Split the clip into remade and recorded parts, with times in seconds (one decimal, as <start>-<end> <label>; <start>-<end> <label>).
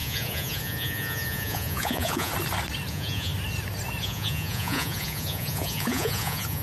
0.0-2.3 remade; 2.3-2.9 recorded; 2.9-3.3 remade; 3.3-4.0 recorded; 4.0-6.6 remade